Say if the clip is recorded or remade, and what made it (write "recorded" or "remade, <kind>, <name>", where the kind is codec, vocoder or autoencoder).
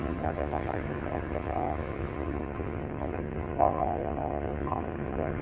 remade, vocoder, HiFi-GAN